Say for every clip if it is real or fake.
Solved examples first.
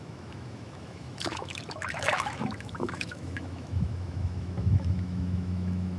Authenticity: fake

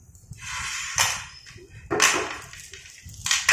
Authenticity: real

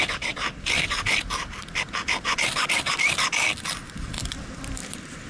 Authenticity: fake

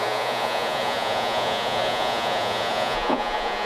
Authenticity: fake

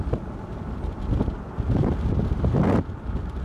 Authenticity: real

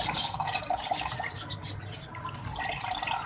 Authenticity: real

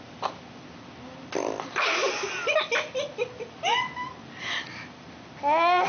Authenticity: real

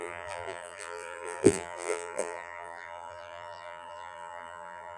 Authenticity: fake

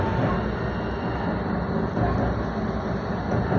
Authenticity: real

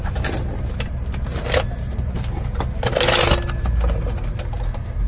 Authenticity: real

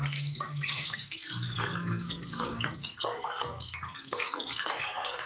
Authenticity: fake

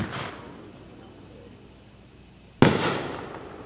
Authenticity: real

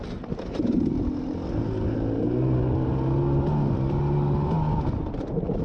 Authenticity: real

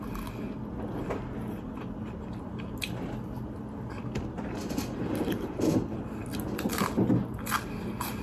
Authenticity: real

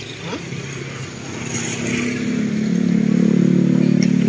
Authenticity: real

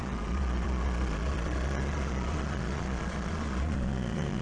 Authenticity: fake